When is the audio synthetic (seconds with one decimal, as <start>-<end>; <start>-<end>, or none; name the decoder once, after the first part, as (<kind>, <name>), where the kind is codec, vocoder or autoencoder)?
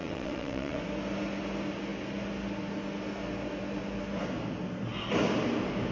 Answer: 0.0-0.8 (vocoder, WaveNeXt)